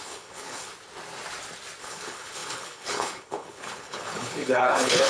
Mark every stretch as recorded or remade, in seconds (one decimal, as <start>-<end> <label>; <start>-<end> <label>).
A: 0.0-0.7 remade; 0.7-1.8 recorded; 1.8-5.1 remade